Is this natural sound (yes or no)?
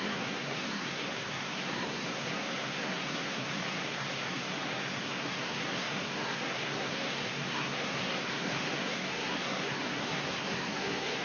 no